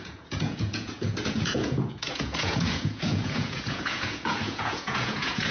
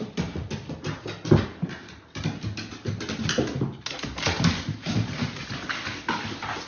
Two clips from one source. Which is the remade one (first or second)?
first